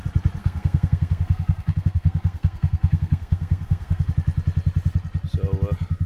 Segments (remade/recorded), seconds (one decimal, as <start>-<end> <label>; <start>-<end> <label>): 0.0-0.4 recorded; 0.4-4.1 remade; 4.1-6.1 recorded